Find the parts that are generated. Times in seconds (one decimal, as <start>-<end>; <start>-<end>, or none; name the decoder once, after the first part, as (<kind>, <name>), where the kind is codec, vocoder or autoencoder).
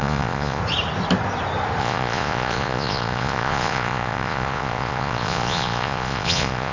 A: 0.0-0.6 (vocoder, Vocos); 1.8-6.7